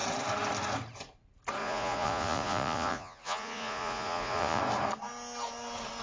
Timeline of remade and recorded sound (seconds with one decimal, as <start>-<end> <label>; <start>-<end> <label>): 0.0-1.6 recorded; 1.6-4.6 remade; 4.6-6.0 recorded